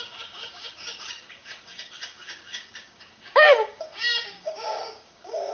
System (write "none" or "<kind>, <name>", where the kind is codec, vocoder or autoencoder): codec, DAC